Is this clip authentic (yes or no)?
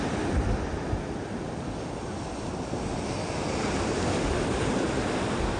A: yes